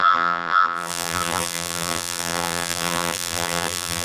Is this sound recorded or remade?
remade